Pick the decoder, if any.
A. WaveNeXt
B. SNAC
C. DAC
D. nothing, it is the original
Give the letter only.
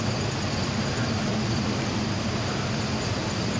D